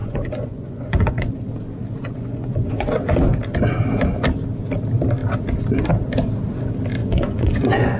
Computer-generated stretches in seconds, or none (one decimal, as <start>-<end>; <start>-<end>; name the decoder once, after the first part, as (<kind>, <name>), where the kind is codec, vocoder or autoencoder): 0.0-1.3 (vocoder, Vocos); 2.0-2.9; 7.0-8.0